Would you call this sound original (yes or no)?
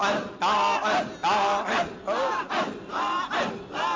yes